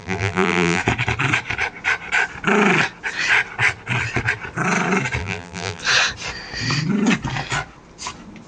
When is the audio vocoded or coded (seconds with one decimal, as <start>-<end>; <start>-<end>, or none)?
0.0-0.8; 5.2-5.8